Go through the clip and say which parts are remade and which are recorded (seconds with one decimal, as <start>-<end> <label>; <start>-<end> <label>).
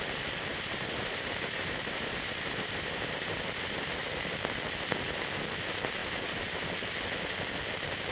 0.0-0.5 recorded; 0.5-4.0 remade; 4.0-6.0 recorded; 6.0-6.7 remade; 6.7-8.1 recorded